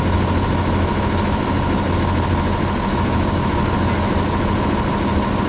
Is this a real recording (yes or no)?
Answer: yes